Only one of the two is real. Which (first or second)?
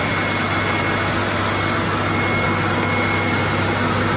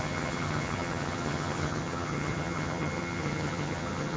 first